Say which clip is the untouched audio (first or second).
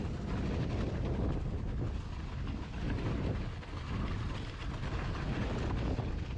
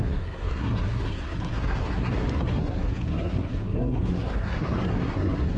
first